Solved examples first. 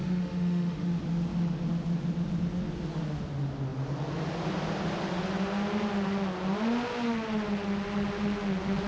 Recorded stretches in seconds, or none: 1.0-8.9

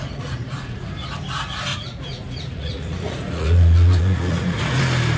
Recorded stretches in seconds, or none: 0.9-1.7; 4.8-5.2

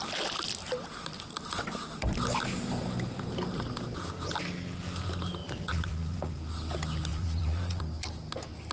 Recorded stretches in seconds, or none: 0.0-5.4; 6.3-7.1; 7.8-8.7

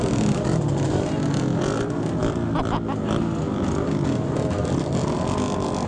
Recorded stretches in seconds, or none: 0.0-5.9

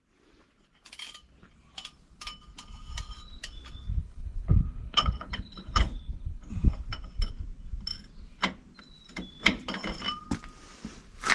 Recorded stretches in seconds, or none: 0.0-3.9; 6.5-11.3

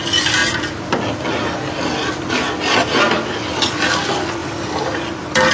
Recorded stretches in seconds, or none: 0.0-5.5